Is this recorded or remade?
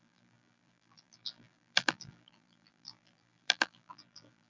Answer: remade